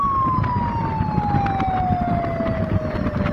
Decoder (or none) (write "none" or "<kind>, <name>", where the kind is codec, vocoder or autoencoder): none